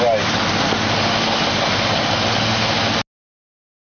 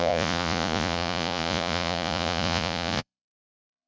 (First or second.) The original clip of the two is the first